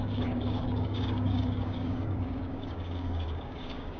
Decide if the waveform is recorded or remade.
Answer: remade